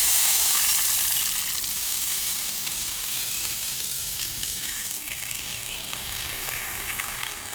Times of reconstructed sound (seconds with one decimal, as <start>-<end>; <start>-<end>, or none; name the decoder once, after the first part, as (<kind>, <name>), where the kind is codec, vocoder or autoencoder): 0.0-0.6 (codec, DAC); 1.7-7.5